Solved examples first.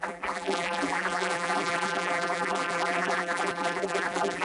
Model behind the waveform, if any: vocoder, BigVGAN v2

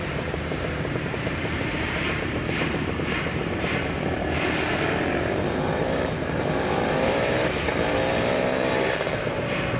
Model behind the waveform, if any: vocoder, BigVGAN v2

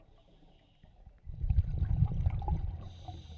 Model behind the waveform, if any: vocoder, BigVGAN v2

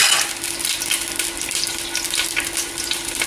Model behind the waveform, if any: none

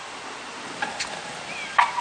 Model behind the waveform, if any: none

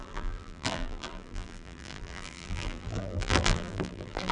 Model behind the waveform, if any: vocoder, BigVGAN v2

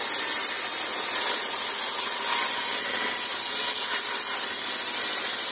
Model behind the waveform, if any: none